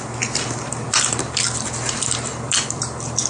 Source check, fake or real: fake